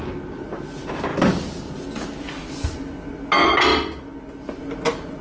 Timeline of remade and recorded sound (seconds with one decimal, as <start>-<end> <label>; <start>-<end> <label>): 0.0-5.2 recorded